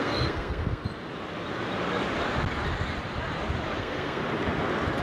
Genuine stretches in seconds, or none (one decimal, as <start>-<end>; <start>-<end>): 0.8-3.8; 4.2-5.0